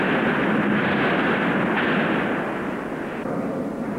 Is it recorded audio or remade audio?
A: recorded